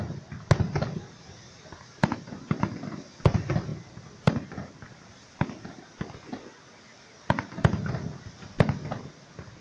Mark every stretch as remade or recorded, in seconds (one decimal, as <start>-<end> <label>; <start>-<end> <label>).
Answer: 0.0-9.6 recorded